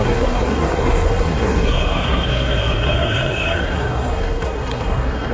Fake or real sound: fake